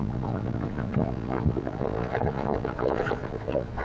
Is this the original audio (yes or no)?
no